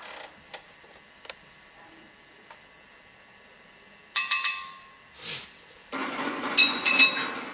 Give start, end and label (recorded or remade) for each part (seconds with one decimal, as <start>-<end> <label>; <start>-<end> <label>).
0.0-6.0 recorded; 6.0-7.0 remade; 7.0-7.5 recorded